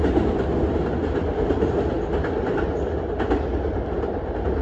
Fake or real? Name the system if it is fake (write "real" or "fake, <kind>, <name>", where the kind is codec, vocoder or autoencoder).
real